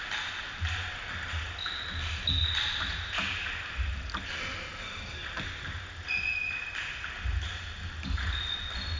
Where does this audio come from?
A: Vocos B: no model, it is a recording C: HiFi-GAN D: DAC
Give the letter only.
B